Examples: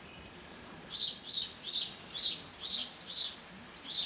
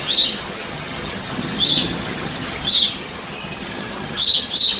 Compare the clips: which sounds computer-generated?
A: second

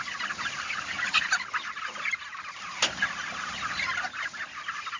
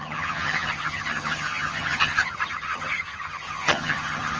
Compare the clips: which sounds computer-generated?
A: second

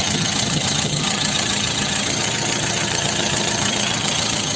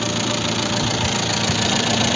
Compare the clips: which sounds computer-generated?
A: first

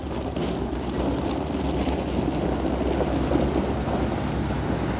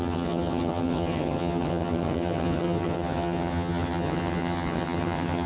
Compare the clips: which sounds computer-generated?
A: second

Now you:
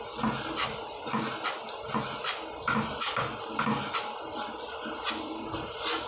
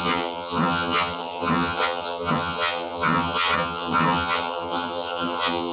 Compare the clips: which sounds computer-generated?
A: second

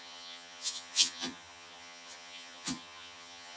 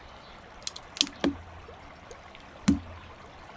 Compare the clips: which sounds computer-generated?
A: first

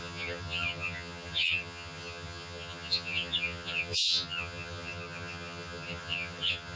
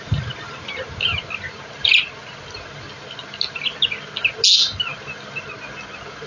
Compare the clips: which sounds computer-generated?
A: first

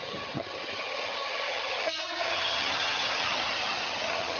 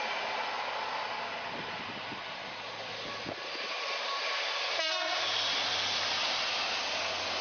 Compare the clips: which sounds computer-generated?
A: first